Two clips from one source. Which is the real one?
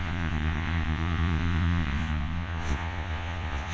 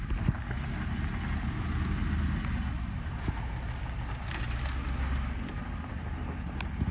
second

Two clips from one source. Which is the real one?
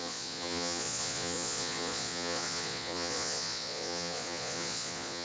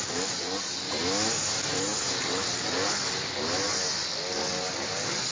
second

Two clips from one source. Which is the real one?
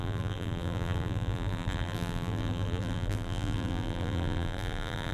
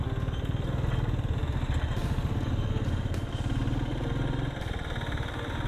second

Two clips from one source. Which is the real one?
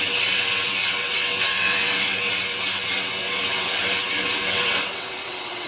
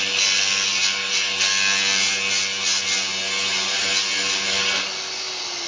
second